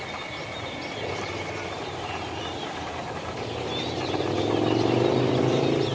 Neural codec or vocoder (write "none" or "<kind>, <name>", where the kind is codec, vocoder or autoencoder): none